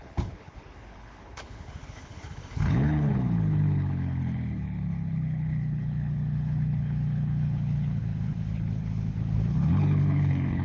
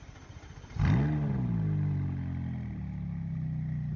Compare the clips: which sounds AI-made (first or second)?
first